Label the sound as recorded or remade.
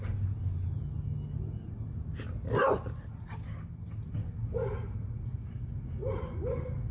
recorded